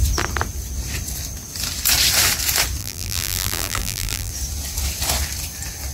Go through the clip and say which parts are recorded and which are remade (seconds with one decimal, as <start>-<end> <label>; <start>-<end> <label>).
0.0-2.8 recorded; 2.8-4.3 remade; 4.3-5.9 recorded